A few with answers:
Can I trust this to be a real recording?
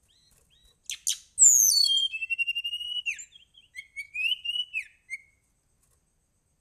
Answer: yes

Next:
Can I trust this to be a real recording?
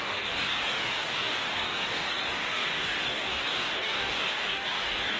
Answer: no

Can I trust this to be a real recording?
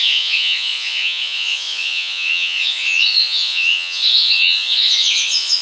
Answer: no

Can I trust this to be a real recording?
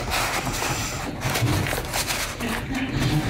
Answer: yes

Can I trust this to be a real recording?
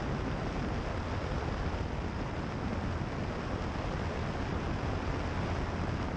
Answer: yes